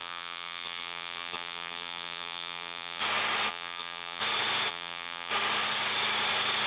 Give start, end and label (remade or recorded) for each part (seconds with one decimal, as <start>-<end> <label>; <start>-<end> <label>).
0.0-3.0 remade; 3.0-3.5 recorded; 3.5-4.2 remade; 4.2-4.7 recorded; 4.7-5.3 remade; 5.3-6.7 recorded